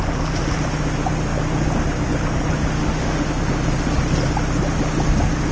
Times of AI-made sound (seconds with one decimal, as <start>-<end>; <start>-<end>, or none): 2.8-3.3